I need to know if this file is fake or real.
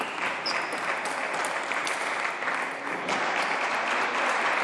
real